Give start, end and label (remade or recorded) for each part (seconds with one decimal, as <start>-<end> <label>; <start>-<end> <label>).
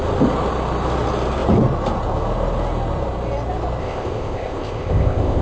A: 0.0-3.8 recorded; 3.8-5.4 remade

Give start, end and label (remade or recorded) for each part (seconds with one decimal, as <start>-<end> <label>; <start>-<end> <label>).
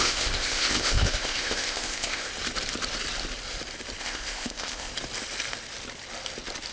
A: 0.0-2.3 remade; 2.3-4.0 recorded; 4.0-4.9 remade; 4.9-6.7 recorded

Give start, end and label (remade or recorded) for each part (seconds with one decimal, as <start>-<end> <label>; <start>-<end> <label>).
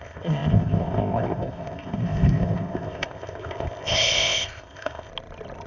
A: 0.0-5.1 remade; 5.1-5.7 recorded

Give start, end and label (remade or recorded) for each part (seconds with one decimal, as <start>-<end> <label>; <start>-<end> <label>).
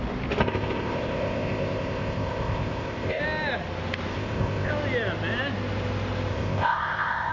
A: 0.0-0.4 recorded; 0.4-3.2 remade; 3.2-4.1 recorded; 4.1-4.7 remade; 4.7-6.3 recorded; 6.3-7.3 remade